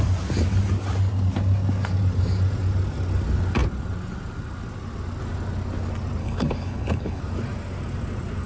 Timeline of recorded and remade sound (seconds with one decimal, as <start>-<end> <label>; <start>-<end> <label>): 0.0-6.2 recorded; 6.2-7.2 remade; 7.2-8.5 recorded